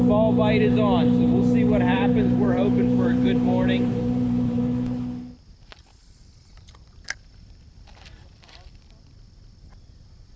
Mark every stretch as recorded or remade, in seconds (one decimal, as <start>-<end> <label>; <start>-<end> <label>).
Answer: 0.0-1.9 recorded; 1.9-4.6 remade; 4.6-10.4 recorded